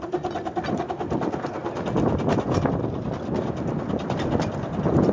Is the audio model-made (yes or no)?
no